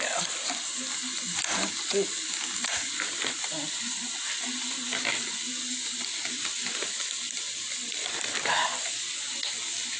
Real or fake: real